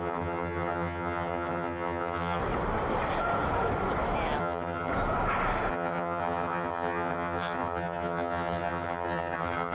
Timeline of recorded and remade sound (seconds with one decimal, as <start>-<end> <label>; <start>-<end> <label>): 0.0-2.4 remade; 2.4-4.4 recorded; 4.4-4.9 remade; 4.9-5.7 recorded; 5.7-9.7 remade